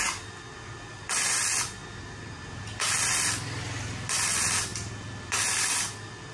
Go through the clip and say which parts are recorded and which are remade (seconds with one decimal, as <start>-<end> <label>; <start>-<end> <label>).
0.0-6.3 recorded